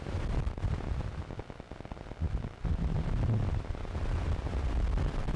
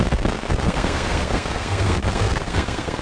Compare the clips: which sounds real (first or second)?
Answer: first